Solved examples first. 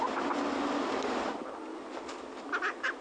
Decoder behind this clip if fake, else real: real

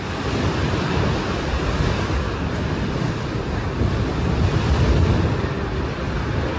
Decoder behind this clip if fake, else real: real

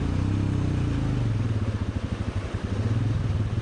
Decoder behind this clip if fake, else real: real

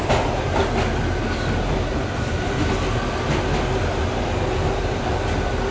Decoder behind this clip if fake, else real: real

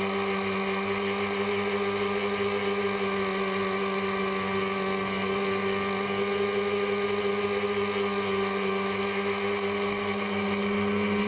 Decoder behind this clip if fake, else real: real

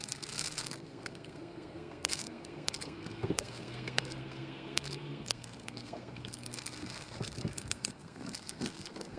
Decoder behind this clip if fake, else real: fake, codec, SNAC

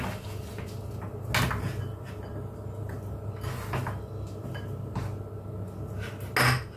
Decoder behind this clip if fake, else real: real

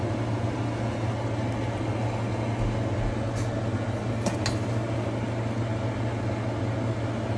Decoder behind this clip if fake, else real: real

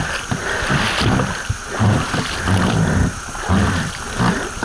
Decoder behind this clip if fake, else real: real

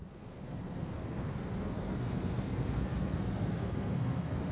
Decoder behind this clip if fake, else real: fake, codec, SNAC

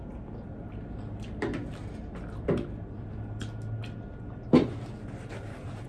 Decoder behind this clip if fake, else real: real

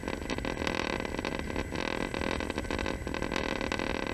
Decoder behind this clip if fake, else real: real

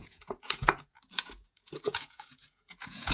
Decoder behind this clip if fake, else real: fake, vocoder, Vocos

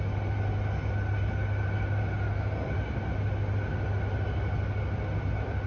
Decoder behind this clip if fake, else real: real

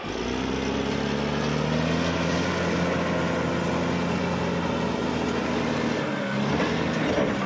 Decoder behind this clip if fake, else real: real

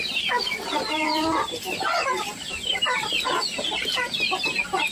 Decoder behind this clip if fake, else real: fake, vocoder, BigVGAN v2